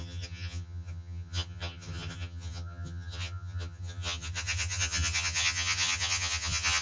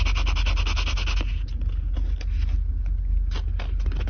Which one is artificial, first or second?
first